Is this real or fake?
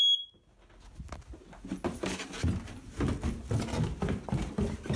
real